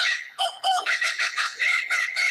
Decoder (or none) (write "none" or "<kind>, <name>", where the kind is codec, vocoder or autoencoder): codec, HILCodec